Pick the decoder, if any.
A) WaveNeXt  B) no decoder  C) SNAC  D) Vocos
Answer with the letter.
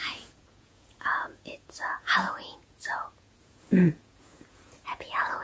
D